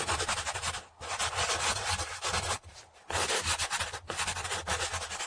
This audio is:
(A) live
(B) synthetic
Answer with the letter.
A